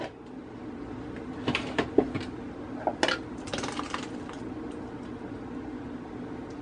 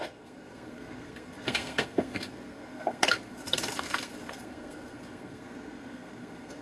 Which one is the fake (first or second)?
second